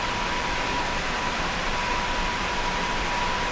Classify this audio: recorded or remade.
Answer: remade